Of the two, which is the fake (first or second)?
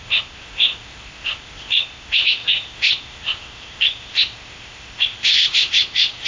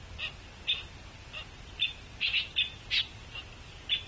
first